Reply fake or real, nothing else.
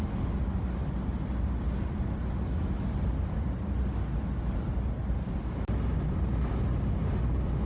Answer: real